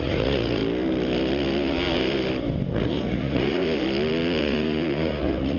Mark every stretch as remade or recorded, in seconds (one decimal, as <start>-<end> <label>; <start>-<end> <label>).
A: 0.0-0.6 remade; 0.6-2.7 recorded; 2.7-3.6 remade; 3.6-4.4 recorded; 4.4-5.6 remade